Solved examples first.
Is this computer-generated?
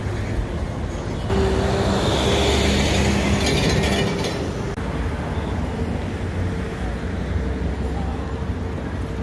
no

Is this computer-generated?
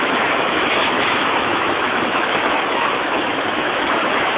yes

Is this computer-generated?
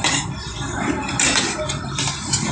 no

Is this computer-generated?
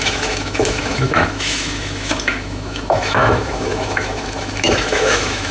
yes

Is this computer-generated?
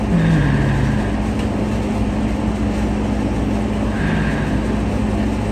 no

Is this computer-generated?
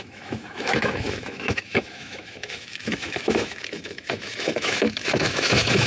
yes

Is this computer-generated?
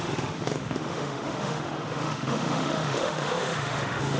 yes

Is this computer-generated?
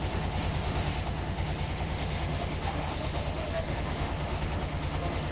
yes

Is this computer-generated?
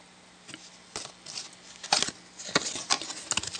no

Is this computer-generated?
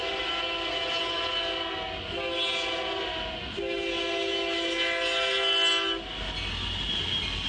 no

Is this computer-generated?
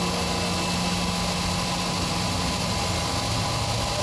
no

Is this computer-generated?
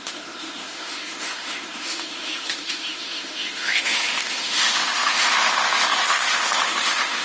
yes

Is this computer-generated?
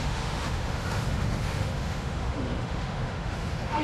yes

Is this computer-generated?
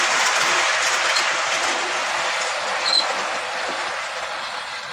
no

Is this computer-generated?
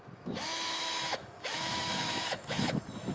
yes